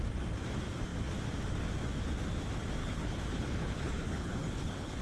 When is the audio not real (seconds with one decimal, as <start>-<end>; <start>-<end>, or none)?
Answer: 2.8-5.0